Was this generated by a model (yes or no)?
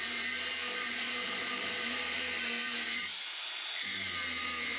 yes